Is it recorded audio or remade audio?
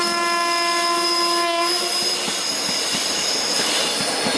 recorded